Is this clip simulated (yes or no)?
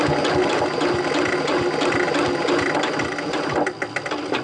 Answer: no